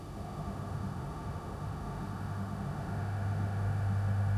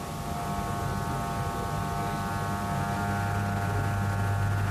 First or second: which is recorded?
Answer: second